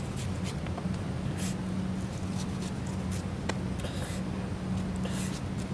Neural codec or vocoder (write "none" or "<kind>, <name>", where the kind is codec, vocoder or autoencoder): none